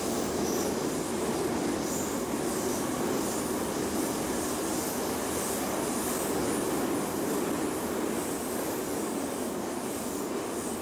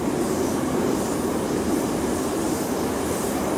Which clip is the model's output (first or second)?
second